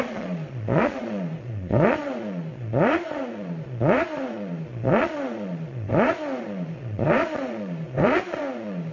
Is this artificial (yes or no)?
yes